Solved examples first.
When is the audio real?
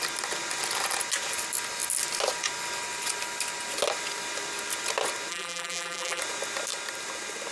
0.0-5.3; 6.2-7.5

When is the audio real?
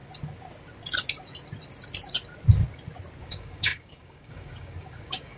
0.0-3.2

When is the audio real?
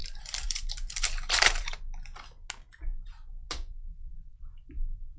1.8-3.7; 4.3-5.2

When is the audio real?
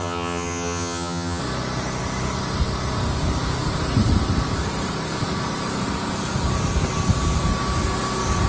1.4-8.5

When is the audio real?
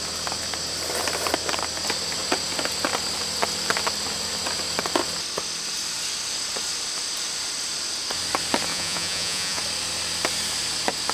0.0-8.7; 9.6-11.1